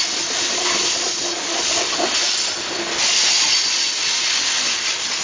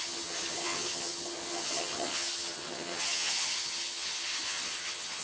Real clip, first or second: first